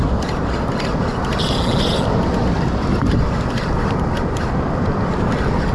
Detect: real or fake real